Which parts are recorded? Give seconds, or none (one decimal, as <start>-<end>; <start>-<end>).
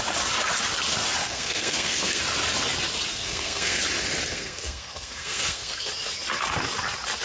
0.0-1.2; 2.2-3.1; 3.8-4.3; 5.9-7.2